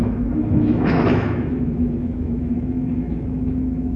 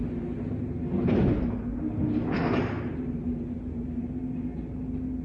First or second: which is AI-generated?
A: first